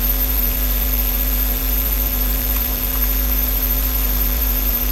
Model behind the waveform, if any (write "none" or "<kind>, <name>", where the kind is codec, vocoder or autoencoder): vocoder, BigVGAN v2